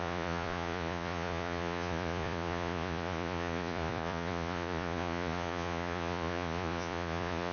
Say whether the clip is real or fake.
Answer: fake